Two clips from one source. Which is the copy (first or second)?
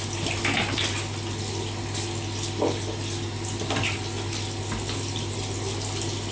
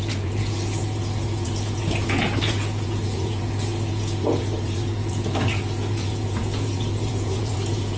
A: second